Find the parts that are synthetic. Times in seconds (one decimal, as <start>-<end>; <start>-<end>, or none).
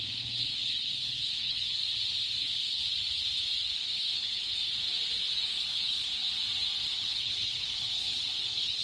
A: 0.0-1.8; 2.4-2.8; 3.4-4.6; 5.4-6.1; 6.9-8.8